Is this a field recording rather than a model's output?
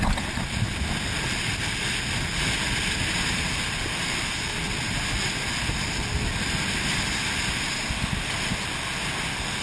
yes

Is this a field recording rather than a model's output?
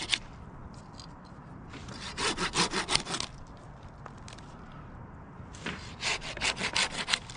yes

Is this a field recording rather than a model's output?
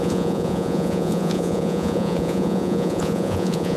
no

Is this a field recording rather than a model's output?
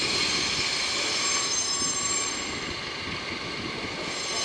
yes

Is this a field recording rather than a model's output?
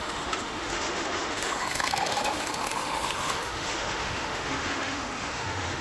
no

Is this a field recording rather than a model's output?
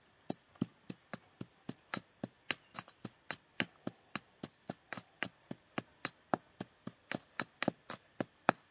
yes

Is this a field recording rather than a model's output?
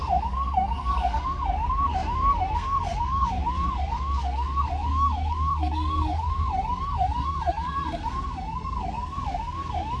no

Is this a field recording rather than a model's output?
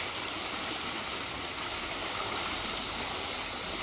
no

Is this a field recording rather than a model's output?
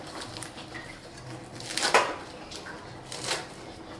yes